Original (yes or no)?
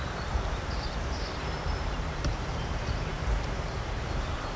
no